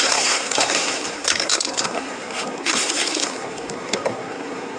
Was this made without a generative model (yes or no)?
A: no